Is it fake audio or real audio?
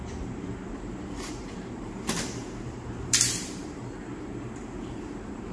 fake